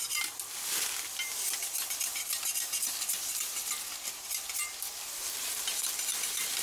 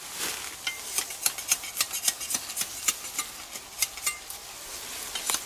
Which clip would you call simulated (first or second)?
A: first